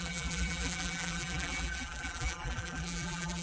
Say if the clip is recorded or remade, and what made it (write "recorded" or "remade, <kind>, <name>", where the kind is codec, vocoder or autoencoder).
remade, vocoder, BigVGAN v2